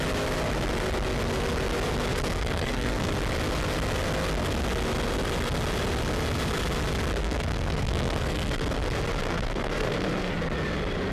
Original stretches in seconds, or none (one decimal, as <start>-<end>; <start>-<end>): 0.0-2.1; 3.1-7.2; 8.5-9.2; 10.4-11.1

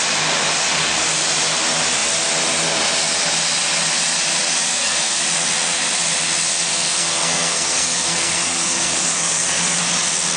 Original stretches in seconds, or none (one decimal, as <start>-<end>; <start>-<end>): 0.0-4.7; 5.2-6.7; 9.8-10.4

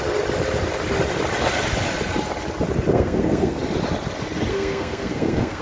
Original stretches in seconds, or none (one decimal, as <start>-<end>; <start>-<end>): 0.0-2.9; 3.6-4.5

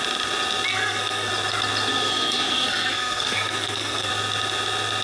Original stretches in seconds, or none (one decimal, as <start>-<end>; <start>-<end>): 0.0-0.7; 1.3-1.9; 4.1-5.0

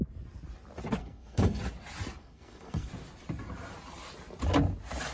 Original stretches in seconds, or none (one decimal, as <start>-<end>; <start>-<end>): 0.0-1.0; 1.6-2.2; 2.9-5.1

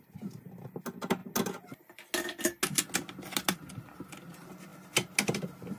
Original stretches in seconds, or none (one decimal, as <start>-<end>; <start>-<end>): 0.0-5.8